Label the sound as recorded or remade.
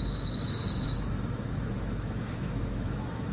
remade